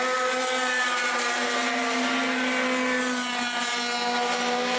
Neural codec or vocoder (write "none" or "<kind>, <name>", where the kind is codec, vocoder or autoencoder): none